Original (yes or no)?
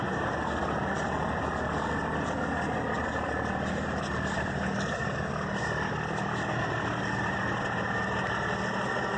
yes